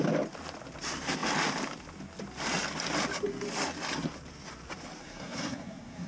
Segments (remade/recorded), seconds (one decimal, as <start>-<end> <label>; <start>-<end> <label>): 0.0-5.0 recorded; 5.0-6.1 remade